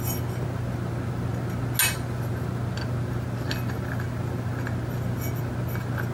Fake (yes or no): no